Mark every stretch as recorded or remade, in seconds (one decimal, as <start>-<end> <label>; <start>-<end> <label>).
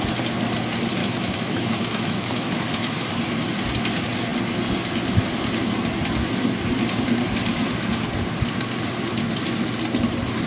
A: 0.0-1.0 recorded; 1.0-3.1 remade; 3.1-10.5 recorded